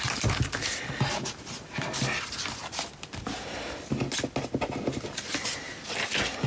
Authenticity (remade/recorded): recorded